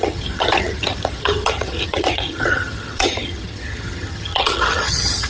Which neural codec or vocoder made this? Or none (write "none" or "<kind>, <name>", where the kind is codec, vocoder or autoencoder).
vocoder, HiFi-GAN